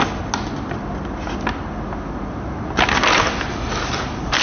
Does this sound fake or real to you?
real